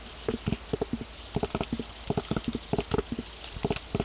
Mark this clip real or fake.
real